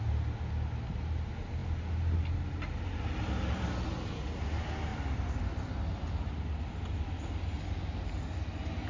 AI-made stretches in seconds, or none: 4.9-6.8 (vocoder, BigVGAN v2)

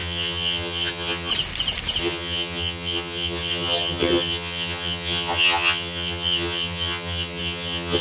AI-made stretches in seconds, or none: 0.0-1.3 (vocoder, HiFi-GAN); 2.0-8.0

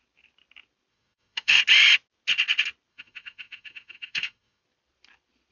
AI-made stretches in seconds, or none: 0.9-1.6 (autoencoder, DAC-VAE); 2.9-4.6

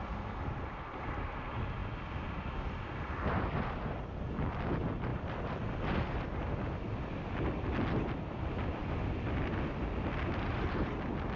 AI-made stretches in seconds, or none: none